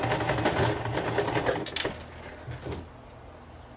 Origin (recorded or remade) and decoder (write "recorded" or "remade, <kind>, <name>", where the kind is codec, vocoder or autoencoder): recorded